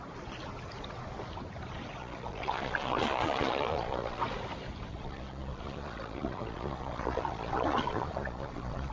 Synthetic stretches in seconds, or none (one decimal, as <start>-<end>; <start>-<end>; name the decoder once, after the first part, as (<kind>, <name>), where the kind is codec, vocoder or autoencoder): 2.0-4.2 (vocoder, Vocos); 4.9-8.9